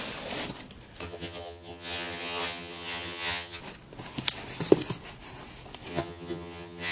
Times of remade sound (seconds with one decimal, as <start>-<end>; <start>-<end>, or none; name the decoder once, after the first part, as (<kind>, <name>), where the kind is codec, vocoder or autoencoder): 1.0-3.6 (vocoder, HiFi-GAN); 5.9-6.9